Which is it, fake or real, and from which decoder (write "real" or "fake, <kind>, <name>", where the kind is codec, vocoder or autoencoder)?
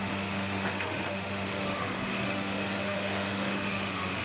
fake, autoencoder, DAC-VAE